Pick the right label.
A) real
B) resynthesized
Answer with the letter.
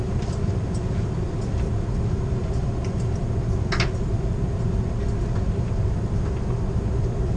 A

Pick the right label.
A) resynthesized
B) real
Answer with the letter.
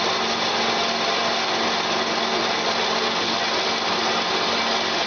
B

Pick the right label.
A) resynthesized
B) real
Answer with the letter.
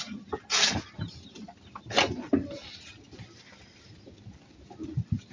B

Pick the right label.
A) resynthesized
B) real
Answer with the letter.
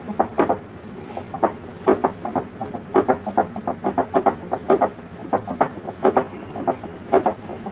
B